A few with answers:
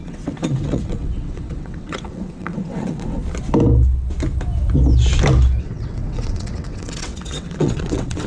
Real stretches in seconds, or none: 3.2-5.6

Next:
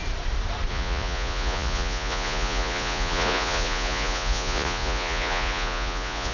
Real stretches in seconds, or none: 0.0-0.7

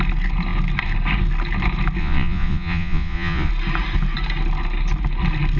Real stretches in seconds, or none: 0.0-2.0; 3.5-5.6

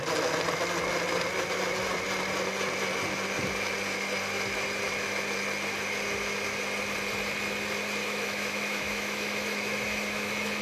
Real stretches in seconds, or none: 0.0-8.0

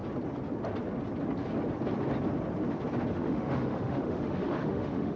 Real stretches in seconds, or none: 0.0-3.1